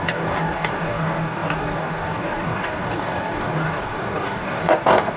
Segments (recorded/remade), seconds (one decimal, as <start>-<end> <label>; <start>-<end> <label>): 0.0-5.2 remade